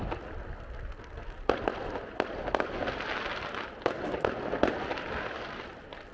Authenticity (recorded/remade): recorded